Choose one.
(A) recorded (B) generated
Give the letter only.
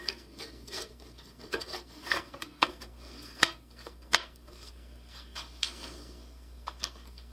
B